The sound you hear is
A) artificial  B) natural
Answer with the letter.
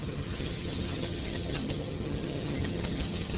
A